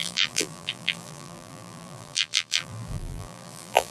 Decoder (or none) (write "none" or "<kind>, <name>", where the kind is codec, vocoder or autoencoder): vocoder, BigVGAN v2